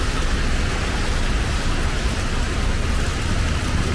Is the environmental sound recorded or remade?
recorded